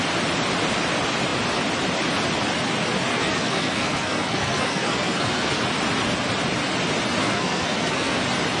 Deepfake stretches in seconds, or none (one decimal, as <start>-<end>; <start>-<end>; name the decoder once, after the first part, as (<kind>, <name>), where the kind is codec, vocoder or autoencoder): 3.1-5.6 (codec, SNAC); 7.2-8.2

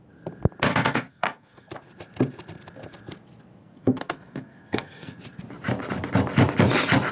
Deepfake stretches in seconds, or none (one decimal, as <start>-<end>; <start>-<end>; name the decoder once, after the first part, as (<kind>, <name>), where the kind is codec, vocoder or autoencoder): 0.7-1.7 (codec, SNAC); 3.6-5.2

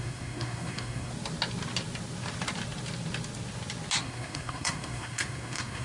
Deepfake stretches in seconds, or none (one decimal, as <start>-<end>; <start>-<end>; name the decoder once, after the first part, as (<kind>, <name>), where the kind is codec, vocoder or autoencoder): 0.0-1.1 (codec, SNAC); 4.0-5.8

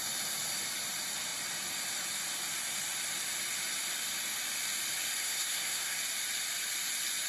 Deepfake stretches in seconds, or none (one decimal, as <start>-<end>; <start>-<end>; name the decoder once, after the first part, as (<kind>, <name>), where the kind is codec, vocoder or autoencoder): 5.2-6.0 (codec, SNAC)

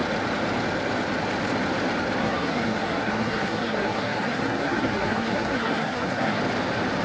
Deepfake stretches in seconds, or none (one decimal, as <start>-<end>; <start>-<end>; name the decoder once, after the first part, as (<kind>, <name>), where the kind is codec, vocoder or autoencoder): 2.2-6.4 (codec, SNAC)

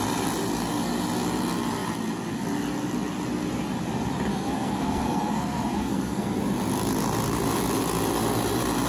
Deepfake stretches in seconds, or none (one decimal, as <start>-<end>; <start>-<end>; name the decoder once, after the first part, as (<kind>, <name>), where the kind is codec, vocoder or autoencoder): 4.3-6.4 (codec, SNAC)

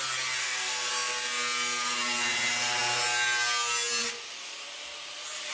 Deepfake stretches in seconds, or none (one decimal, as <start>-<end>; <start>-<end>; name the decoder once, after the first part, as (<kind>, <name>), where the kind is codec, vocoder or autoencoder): 0.4-0.9 (codec, SNAC)